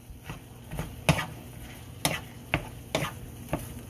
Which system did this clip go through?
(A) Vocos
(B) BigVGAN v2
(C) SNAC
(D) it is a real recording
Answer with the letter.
D